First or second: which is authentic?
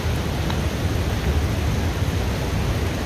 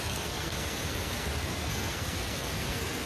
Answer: first